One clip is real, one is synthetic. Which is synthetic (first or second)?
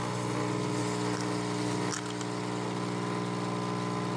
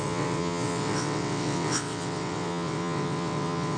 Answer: second